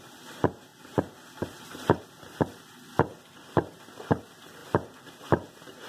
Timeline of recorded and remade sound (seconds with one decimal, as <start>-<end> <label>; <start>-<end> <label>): 0.0-0.7 recorded; 0.7-2.6 remade; 2.6-3.1 recorded; 3.1-3.9 remade; 3.9-4.6 recorded; 4.6-5.9 remade